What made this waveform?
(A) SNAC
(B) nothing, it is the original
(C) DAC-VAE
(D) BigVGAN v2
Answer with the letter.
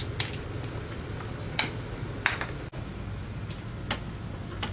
B